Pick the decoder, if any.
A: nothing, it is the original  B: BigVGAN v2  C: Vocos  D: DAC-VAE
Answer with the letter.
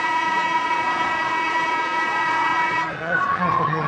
C